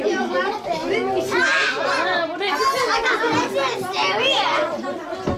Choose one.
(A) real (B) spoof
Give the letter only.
A